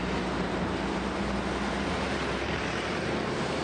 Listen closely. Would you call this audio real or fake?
fake